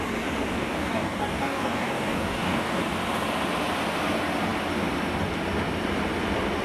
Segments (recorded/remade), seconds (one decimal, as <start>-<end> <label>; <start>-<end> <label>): 0.0-0.5 recorded; 0.5-2.8 remade; 2.8-6.6 recorded